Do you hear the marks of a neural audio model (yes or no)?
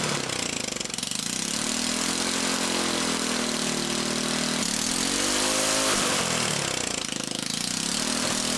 no